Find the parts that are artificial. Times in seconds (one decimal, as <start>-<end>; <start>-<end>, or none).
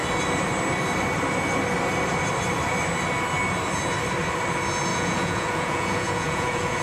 4.9-6.8